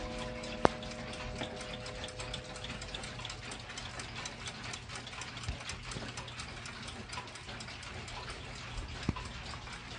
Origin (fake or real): real